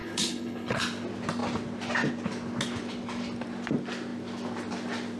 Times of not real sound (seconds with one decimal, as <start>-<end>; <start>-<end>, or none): 0.0-0.8